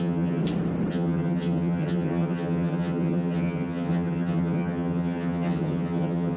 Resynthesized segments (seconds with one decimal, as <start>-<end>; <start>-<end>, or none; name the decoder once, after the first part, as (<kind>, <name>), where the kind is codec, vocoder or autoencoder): 0.0-0.4 (vocoder, HiFi-GAN); 0.9-6.4